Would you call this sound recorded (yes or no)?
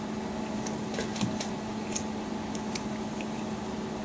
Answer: no